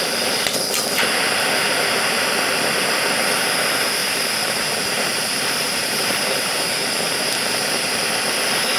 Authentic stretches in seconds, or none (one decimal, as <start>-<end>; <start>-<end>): 0.0-4.0; 6.7-8.8